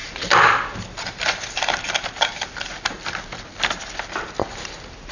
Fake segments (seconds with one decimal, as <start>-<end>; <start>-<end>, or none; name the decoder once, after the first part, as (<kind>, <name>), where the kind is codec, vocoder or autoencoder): none